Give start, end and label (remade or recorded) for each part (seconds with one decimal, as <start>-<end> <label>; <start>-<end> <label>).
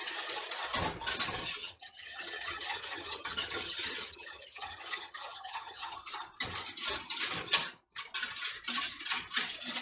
0.0-1.6 recorded; 1.6-6.0 remade; 6.0-9.8 recorded